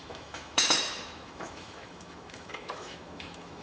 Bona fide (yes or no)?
no